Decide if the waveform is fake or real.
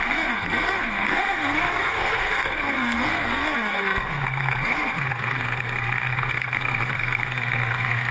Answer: fake